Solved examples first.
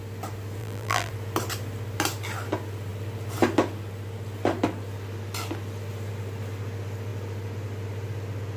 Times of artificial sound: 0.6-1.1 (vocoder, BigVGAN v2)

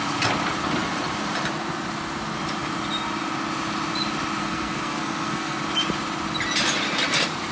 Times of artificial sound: 4.4-5.6 (codec, SNAC)

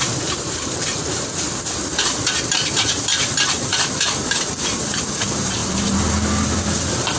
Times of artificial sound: 0.0-7.2 (vocoder, BigVGAN v2)

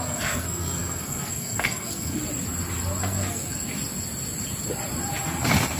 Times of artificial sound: 0.0-2.2 (codec, SNAC); 3.0-3.7